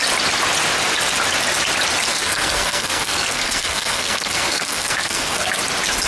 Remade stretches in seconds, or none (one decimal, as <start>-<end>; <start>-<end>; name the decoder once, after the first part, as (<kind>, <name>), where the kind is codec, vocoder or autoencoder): 2.1-5.6 (codec, SNAC)